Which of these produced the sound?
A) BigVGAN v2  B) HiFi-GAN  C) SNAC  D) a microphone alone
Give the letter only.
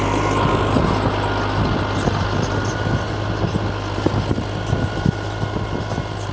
D